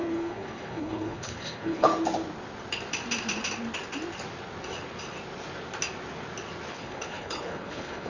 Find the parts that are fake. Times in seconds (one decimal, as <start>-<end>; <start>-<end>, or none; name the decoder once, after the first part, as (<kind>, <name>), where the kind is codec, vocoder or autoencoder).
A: 0.0-1.9 (codec, HILCodec); 6.7-8.1